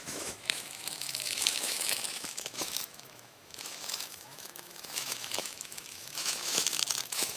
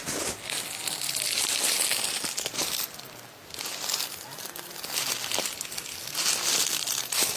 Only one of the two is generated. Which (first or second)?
first